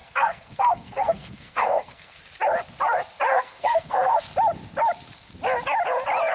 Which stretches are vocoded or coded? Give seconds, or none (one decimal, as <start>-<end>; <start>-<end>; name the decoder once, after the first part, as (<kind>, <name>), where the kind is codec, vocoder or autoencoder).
0.0-2.2 (codec, SNAC); 3.3-4.2

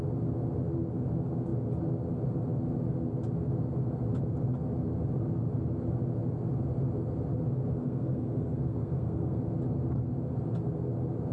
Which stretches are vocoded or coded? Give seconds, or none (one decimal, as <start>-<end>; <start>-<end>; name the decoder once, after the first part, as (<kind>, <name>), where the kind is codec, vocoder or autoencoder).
7.8-9.4 (codec, SNAC)